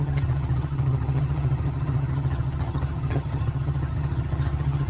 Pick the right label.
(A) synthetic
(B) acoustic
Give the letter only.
A